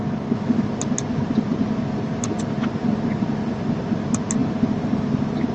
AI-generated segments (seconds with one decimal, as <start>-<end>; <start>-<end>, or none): none